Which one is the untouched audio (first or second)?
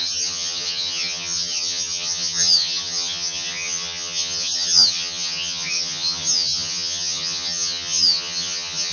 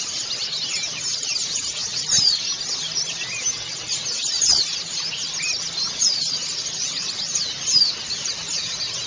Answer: second